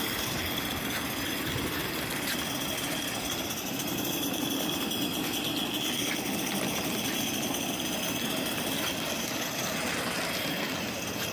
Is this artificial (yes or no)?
no